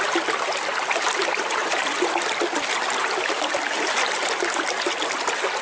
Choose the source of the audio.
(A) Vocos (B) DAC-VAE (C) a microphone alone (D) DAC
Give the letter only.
C